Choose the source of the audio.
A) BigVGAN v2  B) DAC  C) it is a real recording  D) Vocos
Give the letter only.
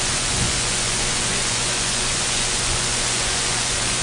D